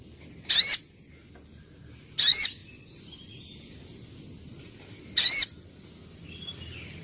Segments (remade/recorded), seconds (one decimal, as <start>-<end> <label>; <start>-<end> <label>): 0.0-7.0 recorded